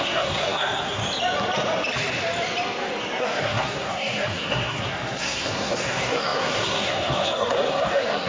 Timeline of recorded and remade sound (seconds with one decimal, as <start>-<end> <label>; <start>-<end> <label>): 0.0-1.0 remade; 1.0-3.2 recorded; 3.2-8.3 remade